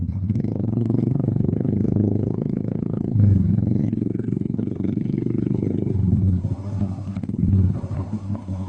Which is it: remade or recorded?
remade